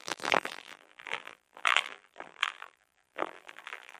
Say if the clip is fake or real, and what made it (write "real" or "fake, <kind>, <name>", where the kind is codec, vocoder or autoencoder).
fake, vocoder, BigVGAN v2